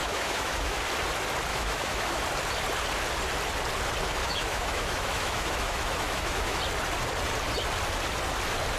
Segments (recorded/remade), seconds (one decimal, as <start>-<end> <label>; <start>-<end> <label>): 0.0-0.8 remade; 0.8-1.5 recorded; 1.5-2.2 remade; 2.2-4.2 recorded; 4.2-6.6 remade; 6.6-8.8 recorded